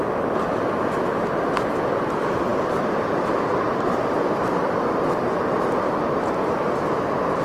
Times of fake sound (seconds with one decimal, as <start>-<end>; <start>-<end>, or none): none